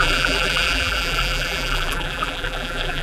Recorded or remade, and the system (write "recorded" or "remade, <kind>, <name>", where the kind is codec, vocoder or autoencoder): remade, vocoder, BigVGAN v2